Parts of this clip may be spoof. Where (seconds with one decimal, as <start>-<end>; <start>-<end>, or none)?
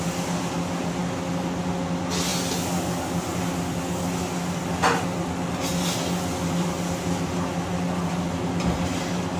none